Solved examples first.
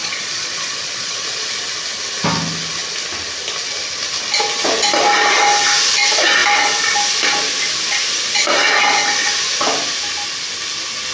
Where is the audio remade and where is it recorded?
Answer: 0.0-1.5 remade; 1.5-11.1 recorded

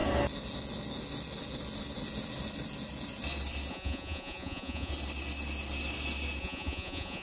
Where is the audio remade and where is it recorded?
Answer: 0.0-3.7 recorded; 3.7-4.9 remade; 4.9-6.4 recorded; 6.4-7.2 remade

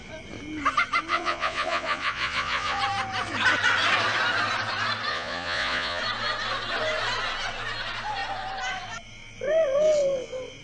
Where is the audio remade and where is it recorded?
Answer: 0.0-1.1 recorded; 1.1-2.8 remade; 2.8-5.1 recorded; 5.1-6.0 remade; 6.0-10.6 recorded

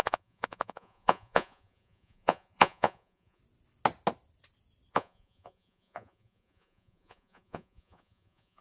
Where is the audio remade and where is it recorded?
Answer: 0.0-3.4 remade; 3.4-4.9 recorded; 4.9-8.6 remade

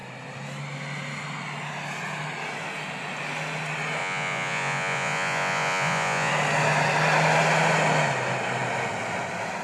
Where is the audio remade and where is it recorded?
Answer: 0.0-4.0 recorded; 4.0-6.3 remade; 6.3-9.6 recorded

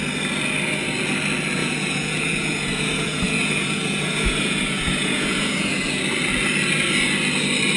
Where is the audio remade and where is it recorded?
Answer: 0.0-1.6 recorded; 1.6-6.0 remade; 6.0-7.8 recorded